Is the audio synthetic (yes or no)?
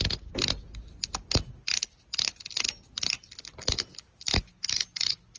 no